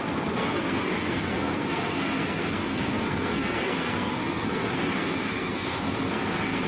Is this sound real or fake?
fake